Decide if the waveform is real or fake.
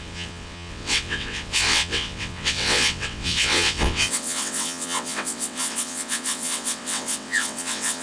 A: fake